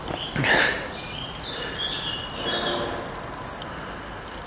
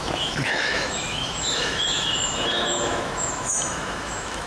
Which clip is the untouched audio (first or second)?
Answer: first